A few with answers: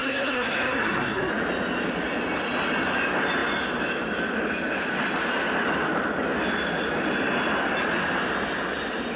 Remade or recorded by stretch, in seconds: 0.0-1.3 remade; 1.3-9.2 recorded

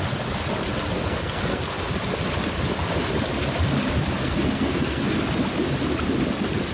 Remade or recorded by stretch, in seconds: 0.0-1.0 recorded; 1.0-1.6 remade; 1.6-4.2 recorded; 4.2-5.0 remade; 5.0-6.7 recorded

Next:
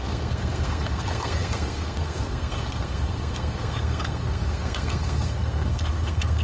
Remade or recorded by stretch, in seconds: 0.0-6.4 remade